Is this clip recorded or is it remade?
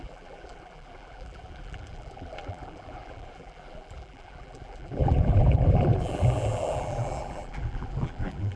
remade